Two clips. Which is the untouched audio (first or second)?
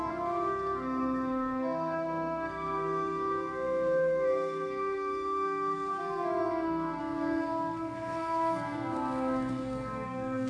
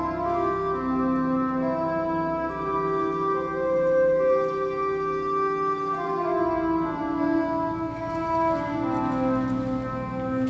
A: second